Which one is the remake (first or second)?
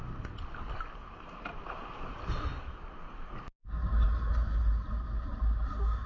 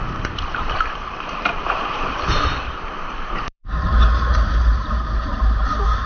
second